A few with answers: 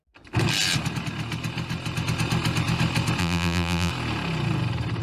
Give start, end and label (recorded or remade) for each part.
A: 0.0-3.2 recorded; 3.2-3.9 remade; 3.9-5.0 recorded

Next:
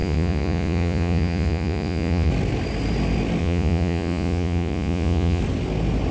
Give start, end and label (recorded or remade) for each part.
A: 0.0-2.3 remade; 2.3-3.4 recorded; 3.4-5.4 remade; 5.4-6.1 recorded

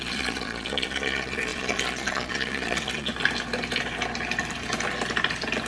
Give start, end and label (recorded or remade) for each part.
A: 0.0-3.1 remade; 3.1-5.7 recorded

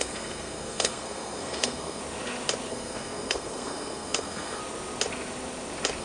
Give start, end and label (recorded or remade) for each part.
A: 0.0-2.0 remade; 2.0-2.7 recorded; 2.7-4.6 remade; 4.6-6.0 recorded